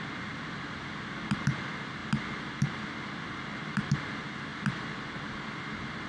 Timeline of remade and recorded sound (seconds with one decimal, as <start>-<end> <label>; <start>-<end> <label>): 0.0-6.1 recorded